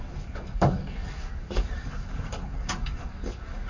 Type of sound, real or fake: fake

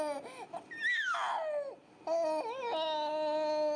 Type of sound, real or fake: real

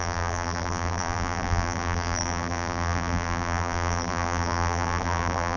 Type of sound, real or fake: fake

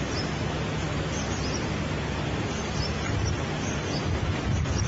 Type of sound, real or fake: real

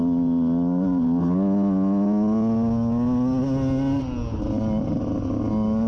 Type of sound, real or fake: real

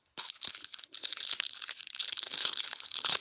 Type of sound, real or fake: fake